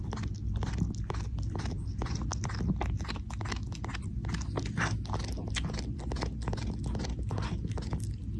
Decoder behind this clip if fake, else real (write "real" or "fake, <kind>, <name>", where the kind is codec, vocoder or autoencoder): real